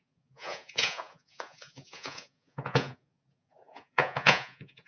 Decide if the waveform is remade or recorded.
remade